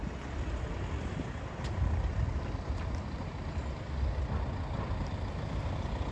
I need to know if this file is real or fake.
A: real